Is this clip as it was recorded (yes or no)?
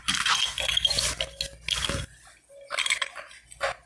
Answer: yes